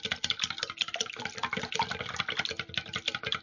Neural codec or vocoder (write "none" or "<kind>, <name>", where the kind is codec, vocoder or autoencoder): none